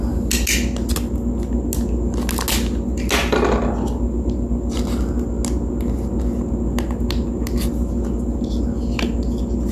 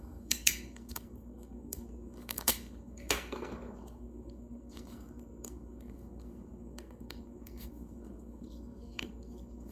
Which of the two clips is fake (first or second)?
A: second